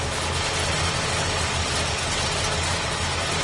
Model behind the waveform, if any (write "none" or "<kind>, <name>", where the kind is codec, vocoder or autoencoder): none